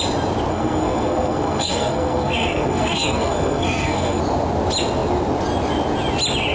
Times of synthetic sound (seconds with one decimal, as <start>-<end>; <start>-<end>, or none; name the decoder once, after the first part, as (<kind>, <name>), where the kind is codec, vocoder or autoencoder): 0.5-4.2 (codec, SNAC)